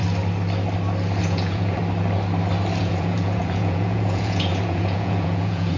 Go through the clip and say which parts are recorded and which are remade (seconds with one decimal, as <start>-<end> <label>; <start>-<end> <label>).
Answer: 0.0-1.2 recorded; 1.2-1.8 remade; 1.8-2.8 recorded; 2.8-5.8 remade